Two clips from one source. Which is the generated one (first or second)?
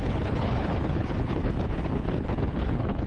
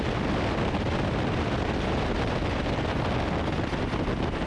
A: first